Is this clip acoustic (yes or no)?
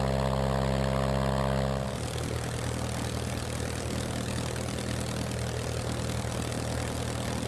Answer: yes